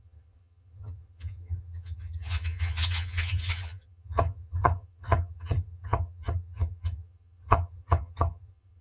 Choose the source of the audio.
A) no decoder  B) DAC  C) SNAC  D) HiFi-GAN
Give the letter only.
D